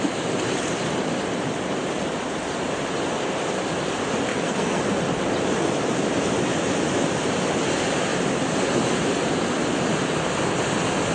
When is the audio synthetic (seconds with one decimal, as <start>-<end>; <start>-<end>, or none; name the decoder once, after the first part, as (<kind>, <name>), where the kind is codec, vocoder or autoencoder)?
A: 4.3-4.8 (codec, SNAC)

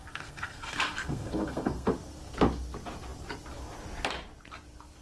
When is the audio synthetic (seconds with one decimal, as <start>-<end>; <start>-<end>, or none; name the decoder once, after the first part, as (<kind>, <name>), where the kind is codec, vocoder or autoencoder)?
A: 0.0-1.9 (codec, SNAC)

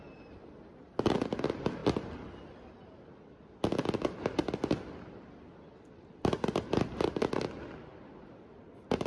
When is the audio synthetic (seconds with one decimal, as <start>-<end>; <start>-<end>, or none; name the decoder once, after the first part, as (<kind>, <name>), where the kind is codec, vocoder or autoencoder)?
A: none

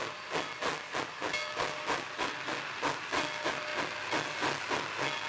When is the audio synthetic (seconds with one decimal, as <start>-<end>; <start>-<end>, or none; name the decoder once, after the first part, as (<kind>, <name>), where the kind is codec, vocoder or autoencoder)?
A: none

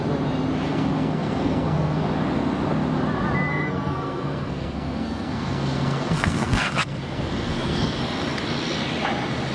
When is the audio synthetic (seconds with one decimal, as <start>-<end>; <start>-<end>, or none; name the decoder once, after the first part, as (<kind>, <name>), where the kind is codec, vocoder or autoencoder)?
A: 0.7-2.0 (codec, SNAC); 3.5-8.0

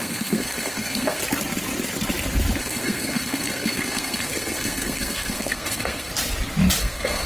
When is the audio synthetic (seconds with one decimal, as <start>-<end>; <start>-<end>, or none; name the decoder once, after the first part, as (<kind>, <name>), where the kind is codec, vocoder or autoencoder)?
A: 0.0-1.2 (codec, SNAC); 2.6-6.1; 6.8-7.3